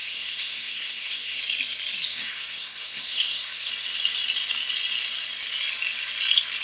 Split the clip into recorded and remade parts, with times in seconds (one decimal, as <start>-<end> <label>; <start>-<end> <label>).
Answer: 0.0-1.4 remade; 1.4-2.1 recorded; 2.1-3.7 remade; 3.7-6.6 recorded